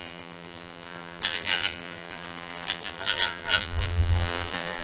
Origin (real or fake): fake